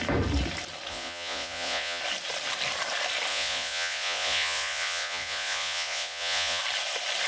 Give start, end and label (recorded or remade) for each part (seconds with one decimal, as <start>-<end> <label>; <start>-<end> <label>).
0.0-0.9 recorded; 0.9-2.0 remade; 2.0-3.3 recorded; 3.3-6.6 remade; 6.6-7.3 recorded